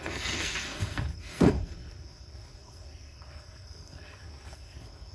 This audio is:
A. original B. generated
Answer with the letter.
B